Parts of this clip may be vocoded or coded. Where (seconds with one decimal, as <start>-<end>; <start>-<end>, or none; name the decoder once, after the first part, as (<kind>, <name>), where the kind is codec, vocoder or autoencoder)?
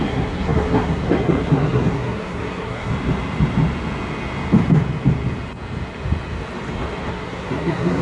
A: 0.0-2.9 (codec, SNAC); 7.1-8.0